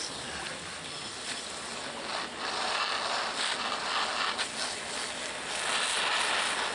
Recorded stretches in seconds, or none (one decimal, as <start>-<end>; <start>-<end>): 0.0-6.7